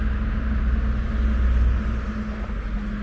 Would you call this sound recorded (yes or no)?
yes